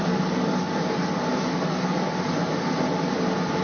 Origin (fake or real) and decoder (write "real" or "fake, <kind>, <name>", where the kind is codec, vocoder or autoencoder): real